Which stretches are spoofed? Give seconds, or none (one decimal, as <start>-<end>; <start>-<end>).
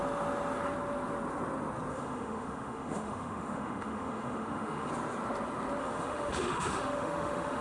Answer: 1.9-4.9; 5.8-7.6